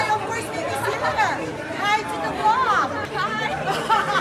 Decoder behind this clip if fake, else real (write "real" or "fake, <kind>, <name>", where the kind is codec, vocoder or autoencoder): fake, vocoder, BigVGAN v2